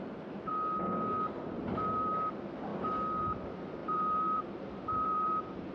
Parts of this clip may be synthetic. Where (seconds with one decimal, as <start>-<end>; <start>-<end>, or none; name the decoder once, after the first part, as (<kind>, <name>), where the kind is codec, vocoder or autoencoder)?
0.0-0.5 (vocoder, BigVGAN v2); 1.6-2.7; 3.2-5.7